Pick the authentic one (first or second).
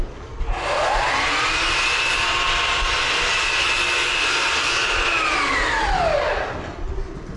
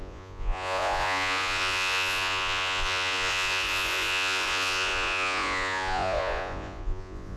first